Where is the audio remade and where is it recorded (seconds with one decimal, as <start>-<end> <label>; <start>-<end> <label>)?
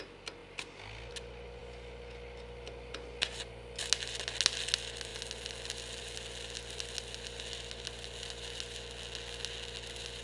0.0-10.2 recorded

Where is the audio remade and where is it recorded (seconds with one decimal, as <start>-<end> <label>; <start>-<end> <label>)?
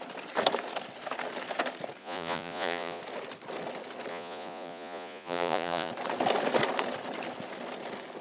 0.0-2.0 recorded; 2.0-3.0 remade; 3.0-4.1 recorded; 4.1-5.9 remade; 5.9-8.2 recorded